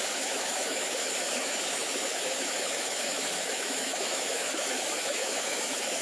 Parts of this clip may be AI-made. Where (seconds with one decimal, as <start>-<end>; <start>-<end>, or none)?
0.0-6.0